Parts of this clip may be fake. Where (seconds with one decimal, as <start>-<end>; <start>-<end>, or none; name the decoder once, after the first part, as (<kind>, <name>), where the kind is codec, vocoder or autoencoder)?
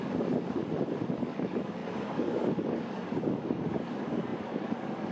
0.0-0.6 (codec, DAC); 1.2-5.1